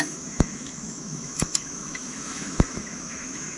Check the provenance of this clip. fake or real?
fake